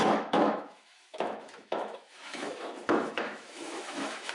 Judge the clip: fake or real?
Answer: fake